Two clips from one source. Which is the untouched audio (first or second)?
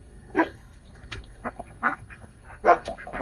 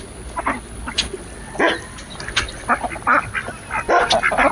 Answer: second